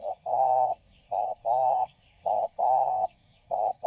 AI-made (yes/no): yes